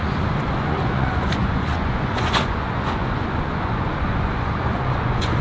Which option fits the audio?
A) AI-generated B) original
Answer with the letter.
A